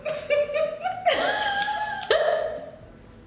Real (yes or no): yes